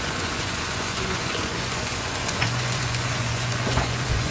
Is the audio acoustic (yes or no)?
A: no